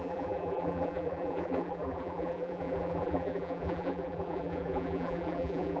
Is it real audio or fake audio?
fake